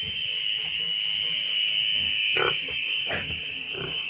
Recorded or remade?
remade